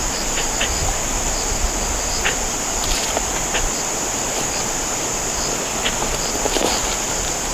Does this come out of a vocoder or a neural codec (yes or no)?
no